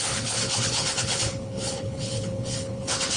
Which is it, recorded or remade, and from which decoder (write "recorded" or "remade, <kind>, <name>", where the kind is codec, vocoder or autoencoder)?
remade, codec, HILCodec